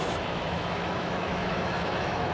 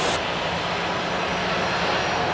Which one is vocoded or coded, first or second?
first